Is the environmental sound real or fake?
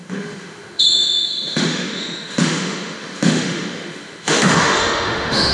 fake